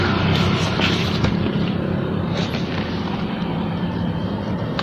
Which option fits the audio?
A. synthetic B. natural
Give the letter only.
A